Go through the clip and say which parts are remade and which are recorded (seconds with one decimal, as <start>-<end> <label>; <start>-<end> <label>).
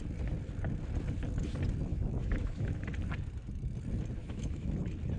0.0-1.9 recorded; 1.9-2.8 remade; 2.8-4.2 recorded; 4.2-4.7 remade; 4.7-5.2 recorded